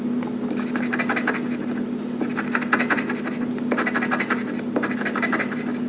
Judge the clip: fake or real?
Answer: real